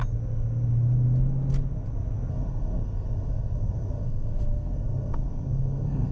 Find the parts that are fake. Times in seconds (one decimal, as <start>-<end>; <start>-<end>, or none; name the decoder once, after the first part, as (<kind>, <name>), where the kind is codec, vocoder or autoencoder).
2.3-6.1 (codec, SNAC)